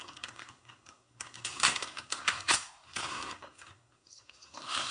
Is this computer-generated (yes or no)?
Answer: yes